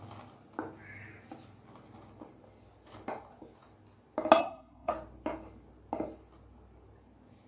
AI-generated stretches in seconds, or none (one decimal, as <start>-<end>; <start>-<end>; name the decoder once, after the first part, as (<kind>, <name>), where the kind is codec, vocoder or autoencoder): 4.4-4.9 (codec, SNAC)